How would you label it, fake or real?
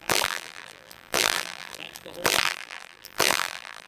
fake